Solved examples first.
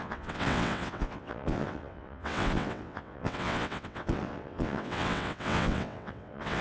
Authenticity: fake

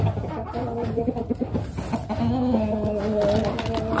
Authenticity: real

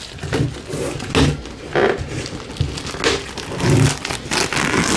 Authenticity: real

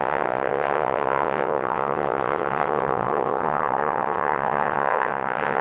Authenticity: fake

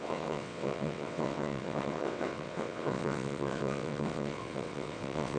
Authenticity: fake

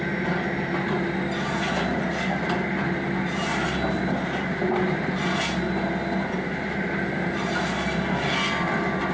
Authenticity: real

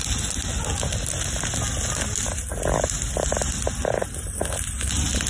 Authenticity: real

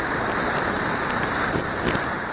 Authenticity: real